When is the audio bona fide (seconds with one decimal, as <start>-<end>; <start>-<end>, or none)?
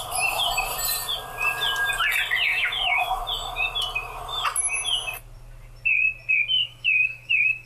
0.0-2.5; 3.2-6.6